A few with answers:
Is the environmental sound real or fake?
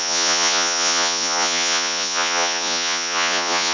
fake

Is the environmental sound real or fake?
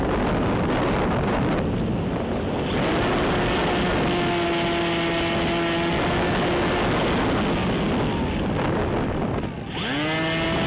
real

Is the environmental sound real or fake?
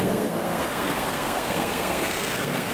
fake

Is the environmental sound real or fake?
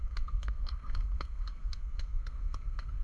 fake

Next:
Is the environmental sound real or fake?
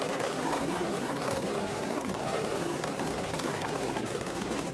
fake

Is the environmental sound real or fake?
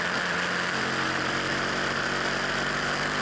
real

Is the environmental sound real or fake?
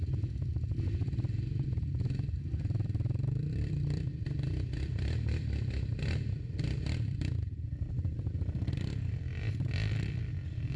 fake